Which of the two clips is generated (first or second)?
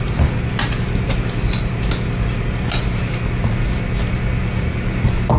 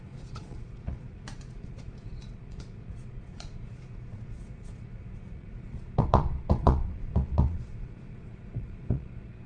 second